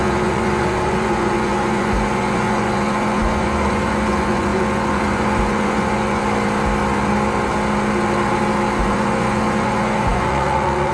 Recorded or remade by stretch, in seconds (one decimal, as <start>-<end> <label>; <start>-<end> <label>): 0.0-6.2 remade; 6.2-8.8 recorded; 8.8-10.9 remade